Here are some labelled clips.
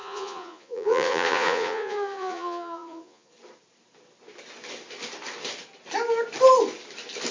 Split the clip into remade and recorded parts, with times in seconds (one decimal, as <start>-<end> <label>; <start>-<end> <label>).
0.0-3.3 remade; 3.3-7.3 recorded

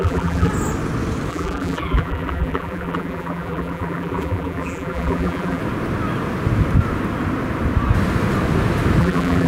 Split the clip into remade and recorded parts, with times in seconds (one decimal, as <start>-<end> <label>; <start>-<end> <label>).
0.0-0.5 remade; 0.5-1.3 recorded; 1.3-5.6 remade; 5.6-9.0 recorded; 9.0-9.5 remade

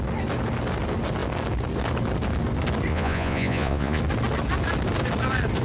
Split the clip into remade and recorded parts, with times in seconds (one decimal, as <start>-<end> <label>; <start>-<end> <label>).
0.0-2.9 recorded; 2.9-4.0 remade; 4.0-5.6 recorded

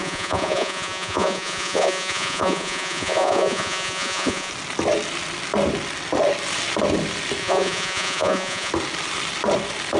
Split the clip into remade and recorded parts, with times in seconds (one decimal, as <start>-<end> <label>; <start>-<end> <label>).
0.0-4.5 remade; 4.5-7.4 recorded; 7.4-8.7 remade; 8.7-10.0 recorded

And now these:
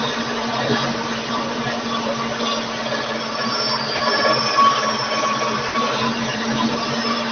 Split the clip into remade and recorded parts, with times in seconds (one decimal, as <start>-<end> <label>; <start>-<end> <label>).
0.0-2.1 remade; 2.1-3.8 recorded; 3.8-7.3 remade

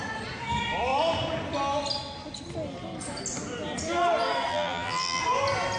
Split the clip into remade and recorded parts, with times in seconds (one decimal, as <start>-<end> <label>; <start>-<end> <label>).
0.0-4.5 recorded; 4.5-5.2 remade; 5.2-5.8 recorded

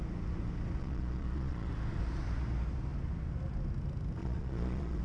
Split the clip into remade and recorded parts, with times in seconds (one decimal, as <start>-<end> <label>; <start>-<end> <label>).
0.0-0.8 recorded; 0.8-1.7 remade; 1.7-4.2 recorded; 4.2-5.0 remade